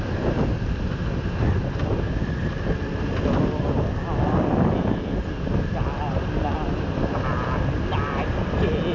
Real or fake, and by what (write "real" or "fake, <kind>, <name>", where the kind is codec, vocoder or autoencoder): real